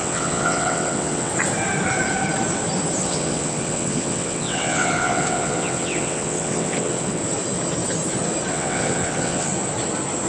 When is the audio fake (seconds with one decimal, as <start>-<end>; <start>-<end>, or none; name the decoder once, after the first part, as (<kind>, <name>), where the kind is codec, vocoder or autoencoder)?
0.0-1.3 (vocoder, WaveNeXt); 3.0-7.2; 8.5-9.5